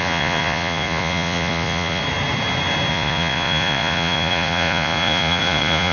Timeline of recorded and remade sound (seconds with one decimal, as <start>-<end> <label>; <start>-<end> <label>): 0.0-2.0 remade; 2.0-2.9 recorded; 2.9-5.9 remade

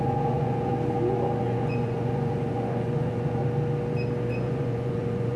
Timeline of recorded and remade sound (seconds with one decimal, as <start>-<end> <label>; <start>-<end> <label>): 0.0-0.7 remade; 0.7-1.4 recorded; 1.4-3.4 remade; 3.4-4.3 recorded; 4.3-5.4 remade

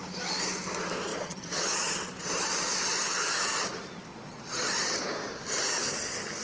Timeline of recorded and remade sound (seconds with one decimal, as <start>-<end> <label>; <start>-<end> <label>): 0.0-1.1 recorded; 1.1-1.9 remade; 1.9-4.1 recorded; 4.1-4.8 remade; 4.8-6.4 recorded

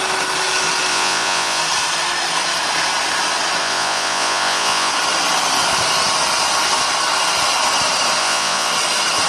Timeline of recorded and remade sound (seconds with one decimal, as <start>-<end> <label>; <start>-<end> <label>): 0.0-0.9 recorded; 0.9-1.6 remade; 1.6-3.6 recorded; 3.6-4.9 remade; 4.9-8.2 recorded; 8.2-8.7 remade; 8.7-9.3 recorded